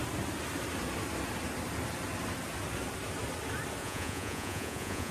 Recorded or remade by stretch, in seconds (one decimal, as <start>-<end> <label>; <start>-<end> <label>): 0.0-3.8 recorded; 3.8-5.1 remade